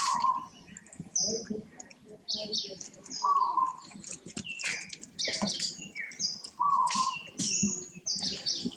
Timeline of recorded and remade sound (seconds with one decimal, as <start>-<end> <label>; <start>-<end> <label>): 0.0-2.4 recorded; 2.4-3.8 remade; 3.8-8.8 recorded